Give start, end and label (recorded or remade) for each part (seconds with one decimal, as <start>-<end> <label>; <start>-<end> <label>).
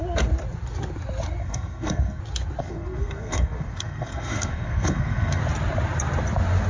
0.0-1.4 recorded; 1.4-2.2 remade; 2.2-2.6 recorded; 2.6-5.4 remade; 5.4-6.7 recorded